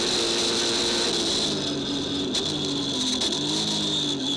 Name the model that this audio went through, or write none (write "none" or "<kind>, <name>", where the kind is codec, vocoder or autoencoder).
none